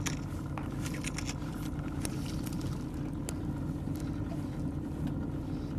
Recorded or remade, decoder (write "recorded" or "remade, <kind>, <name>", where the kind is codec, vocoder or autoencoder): recorded